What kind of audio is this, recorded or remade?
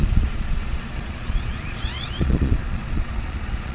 remade